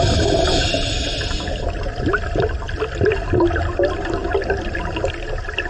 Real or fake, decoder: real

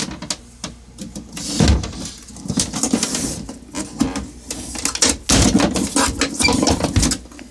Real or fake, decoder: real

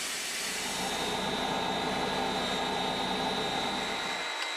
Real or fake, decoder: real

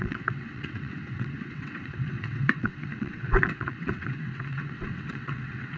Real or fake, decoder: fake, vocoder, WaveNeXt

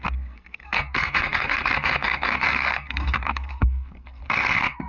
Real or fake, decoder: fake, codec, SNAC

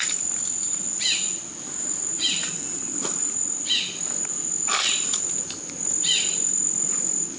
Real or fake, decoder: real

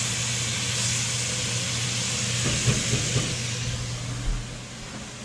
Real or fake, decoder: real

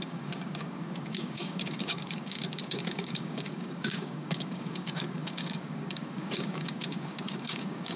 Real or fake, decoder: fake, codec, DAC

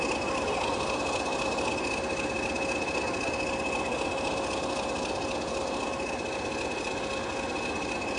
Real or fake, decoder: real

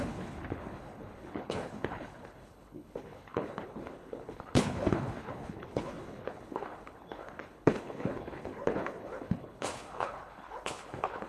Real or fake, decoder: fake, codec, HILCodec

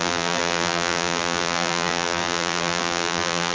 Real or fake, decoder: fake, vocoder, BigVGAN v2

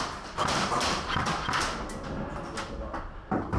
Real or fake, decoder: real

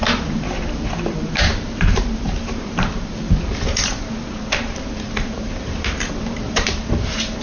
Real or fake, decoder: fake, vocoder, BigVGAN v2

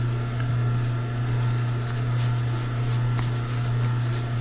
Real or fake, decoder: real